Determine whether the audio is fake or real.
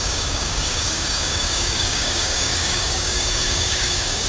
fake